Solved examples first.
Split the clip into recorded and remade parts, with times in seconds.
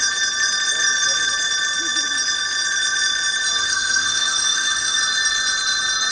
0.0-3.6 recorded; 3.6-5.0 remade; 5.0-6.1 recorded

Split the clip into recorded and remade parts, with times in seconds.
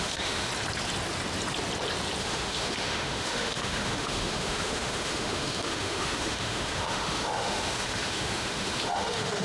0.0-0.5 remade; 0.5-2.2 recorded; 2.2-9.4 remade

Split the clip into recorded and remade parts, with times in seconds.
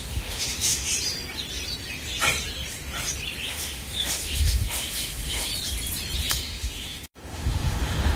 0.0-0.9 remade; 0.9-3.5 recorded; 3.5-5.5 remade; 5.5-6.3 recorded; 6.3-8.2 remade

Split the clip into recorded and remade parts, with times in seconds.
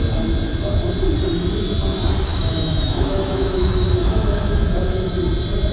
0.0-2.3 recorded; 2.3-5.1 remade; 5.1-5.7 recorded